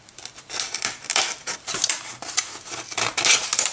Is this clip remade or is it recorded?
recorded